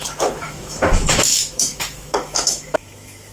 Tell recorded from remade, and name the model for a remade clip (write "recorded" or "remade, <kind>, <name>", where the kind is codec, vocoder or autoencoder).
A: remade, autoencoder, DAC-VAE